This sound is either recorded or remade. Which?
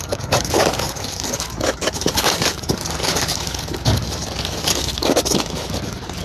remade